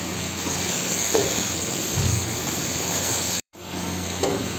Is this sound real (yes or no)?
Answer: no